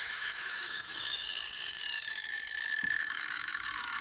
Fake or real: fake